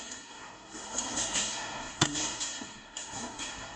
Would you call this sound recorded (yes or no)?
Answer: no